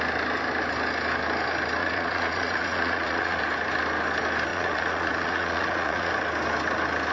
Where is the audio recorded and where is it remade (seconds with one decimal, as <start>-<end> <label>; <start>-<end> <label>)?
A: 0.0-1.8 recorded; 1.8-3.4 remade; 3.4-4.5 recorded; 4.5-6.1 remade; 6.1-7.1 recorded